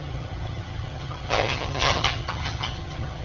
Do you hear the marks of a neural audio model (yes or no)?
yes